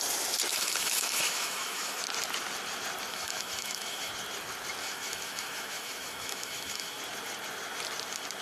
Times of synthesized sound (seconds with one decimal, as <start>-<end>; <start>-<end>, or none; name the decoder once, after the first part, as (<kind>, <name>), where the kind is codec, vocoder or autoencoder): 0.5-2.0 (autoencoder, DAC-VAE); 3.1-4.1; 4.8-7.0